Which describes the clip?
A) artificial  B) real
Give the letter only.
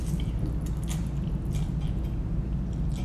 B